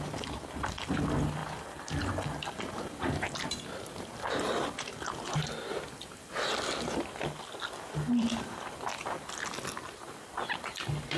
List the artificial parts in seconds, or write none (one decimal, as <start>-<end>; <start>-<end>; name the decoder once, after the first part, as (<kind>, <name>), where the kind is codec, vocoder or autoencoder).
none